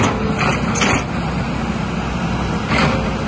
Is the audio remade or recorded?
recorded